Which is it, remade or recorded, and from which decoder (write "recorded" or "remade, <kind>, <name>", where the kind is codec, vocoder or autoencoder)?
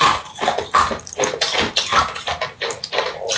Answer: recorded